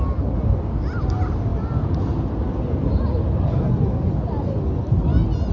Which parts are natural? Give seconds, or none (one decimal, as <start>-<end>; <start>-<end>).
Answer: 0.0-5.5